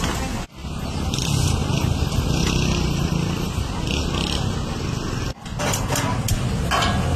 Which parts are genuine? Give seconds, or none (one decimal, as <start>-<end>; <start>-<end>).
0.0-0.6; 3.6-7.2